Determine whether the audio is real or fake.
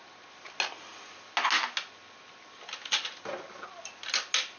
real